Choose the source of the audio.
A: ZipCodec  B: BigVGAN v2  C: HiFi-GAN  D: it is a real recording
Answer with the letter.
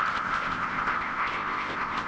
A